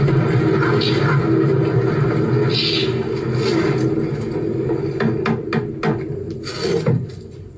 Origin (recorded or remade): recorded